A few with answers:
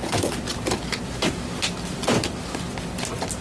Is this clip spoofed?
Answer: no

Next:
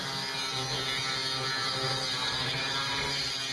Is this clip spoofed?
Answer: no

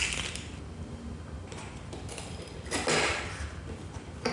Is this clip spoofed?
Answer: no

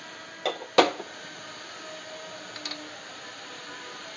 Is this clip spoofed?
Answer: no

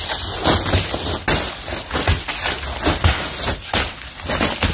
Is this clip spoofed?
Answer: no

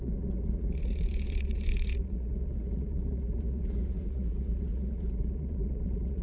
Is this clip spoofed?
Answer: yes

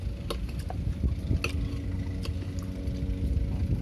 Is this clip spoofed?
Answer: no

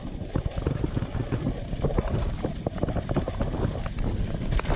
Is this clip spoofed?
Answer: no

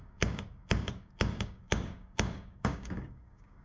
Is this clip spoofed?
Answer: yes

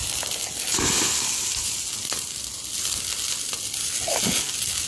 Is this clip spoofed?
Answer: no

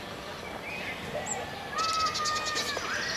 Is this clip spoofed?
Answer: no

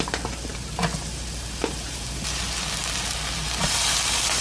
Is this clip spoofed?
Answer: no